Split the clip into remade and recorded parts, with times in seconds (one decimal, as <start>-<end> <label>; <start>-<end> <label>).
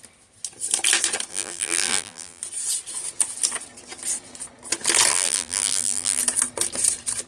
0.0-1.3 recorded; 1.3-2.4 remade; 2.4-5.1 recorded; 5.1-6.2 remade; 6.2-7.3 recorded